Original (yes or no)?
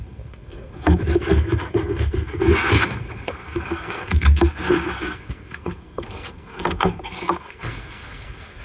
no